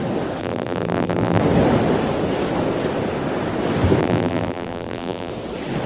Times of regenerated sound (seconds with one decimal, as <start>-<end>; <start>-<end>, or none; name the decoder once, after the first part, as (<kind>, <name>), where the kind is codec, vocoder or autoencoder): 0.4-1.4 (vocoder, BigVGAN v2); 4.0-5.3